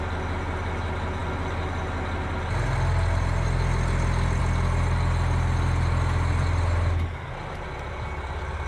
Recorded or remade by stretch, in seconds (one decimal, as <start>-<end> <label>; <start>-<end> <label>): 0.0-8.7 recorded